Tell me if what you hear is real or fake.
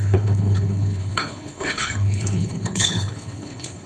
fake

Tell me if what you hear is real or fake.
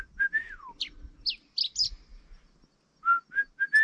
real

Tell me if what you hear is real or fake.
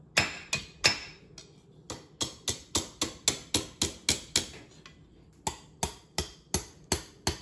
real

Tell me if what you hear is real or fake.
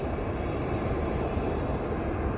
real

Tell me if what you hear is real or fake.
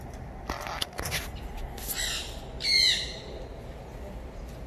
real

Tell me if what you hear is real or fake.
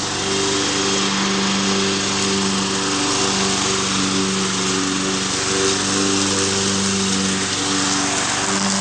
real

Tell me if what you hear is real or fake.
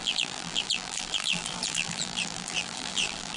fake